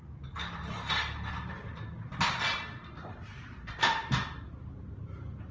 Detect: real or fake real